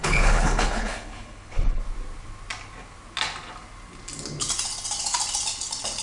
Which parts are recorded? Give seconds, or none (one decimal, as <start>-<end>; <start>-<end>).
1.8-6.0